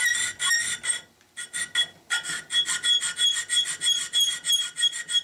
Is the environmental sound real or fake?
real